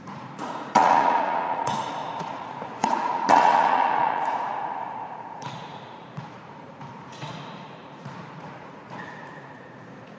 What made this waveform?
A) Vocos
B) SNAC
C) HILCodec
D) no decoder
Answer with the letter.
A